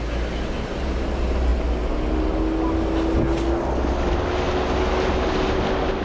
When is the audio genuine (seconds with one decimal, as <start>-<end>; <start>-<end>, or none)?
0.0-6.0